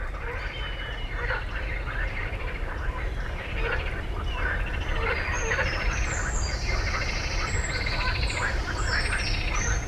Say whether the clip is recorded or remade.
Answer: recorded